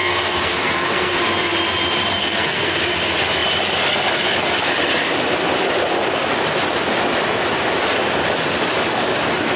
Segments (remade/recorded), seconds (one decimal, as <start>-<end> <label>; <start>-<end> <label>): 0.0-1.2 remade; 1.2-2.2 recorded; 2.2-2.8 remade; 2.8-9.6 recorded